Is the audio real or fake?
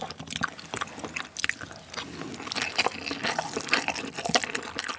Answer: real